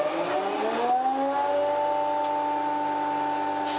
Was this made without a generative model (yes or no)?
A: yes